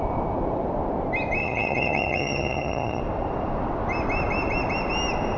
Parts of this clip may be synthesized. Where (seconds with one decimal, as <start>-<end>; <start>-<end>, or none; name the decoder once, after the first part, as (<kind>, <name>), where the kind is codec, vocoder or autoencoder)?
1.4-3.0 (vocoder, HiFi-GAN)